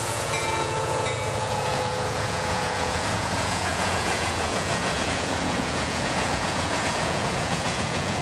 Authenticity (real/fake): fake